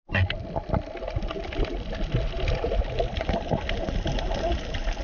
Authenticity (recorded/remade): recorded